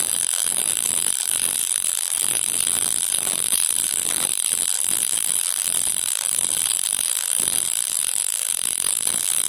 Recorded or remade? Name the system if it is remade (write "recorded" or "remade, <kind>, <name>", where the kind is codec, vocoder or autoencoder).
remade, vocoder, BigVGAN v2